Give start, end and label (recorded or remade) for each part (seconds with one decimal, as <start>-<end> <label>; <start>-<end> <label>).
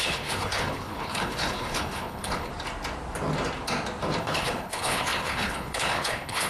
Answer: 0.0-2.5 remade; 2.5-4.2 recorded; 4.2-6.5 remade